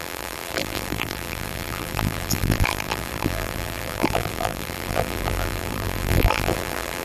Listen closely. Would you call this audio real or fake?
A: fake